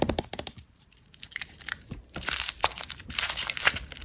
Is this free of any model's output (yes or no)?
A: no